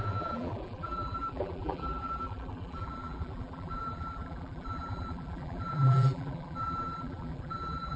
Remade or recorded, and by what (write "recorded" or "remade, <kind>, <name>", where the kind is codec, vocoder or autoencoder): remade, vocoder, BigVGAN v2